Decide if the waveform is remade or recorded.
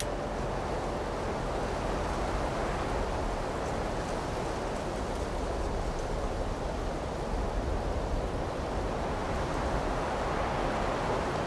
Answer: recorded